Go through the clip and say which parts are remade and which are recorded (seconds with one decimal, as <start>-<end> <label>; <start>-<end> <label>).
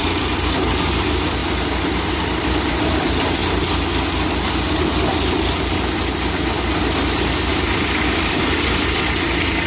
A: 0.0-1.4 remade; 1.4-2.1 recorded; 2.1-3.4 remade; 3.4-7.5 recorded; 7.5-9.7 remade